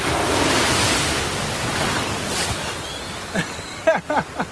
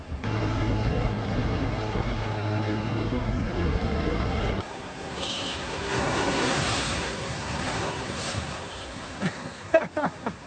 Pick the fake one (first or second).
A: second